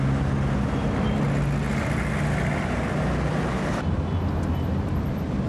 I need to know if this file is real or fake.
real